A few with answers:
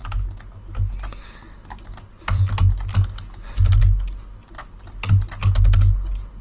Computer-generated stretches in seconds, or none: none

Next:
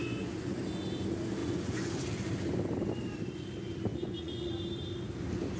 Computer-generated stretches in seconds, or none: 0.0-0.6 (vocoder, Vocos); 1.4-1.9; 3.9-4.5

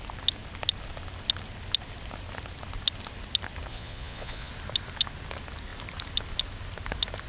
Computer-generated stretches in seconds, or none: 3.7-4.5 (vocoder, Vocos)